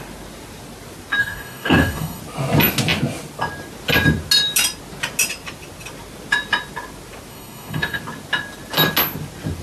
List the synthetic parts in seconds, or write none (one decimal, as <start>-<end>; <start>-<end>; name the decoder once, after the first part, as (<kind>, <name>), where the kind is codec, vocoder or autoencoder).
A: 1.2-2.2 (codec, DAC); 7.3-8.0